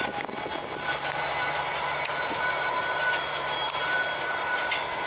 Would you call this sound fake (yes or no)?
yes